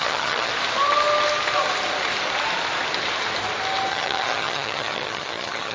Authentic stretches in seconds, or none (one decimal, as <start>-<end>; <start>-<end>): 0.5-3.9